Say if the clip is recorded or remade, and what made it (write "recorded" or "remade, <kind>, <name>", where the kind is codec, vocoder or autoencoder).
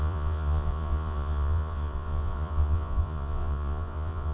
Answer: remade, vocoder, Vocos